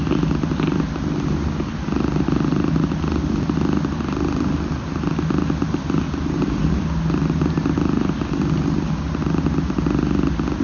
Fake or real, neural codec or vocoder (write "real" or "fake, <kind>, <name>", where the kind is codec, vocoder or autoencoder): real